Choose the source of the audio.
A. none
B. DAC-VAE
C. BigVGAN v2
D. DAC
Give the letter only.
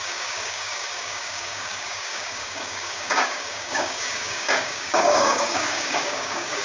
D